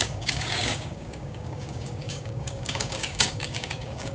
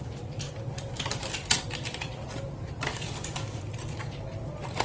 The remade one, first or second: first